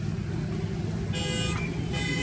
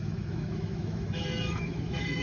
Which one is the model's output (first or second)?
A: second